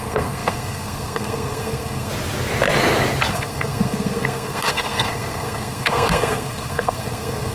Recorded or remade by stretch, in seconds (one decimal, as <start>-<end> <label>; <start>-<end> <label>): 0.0-2.1 remade; 2.1-3.3 recorded; 3.3-7.5 remade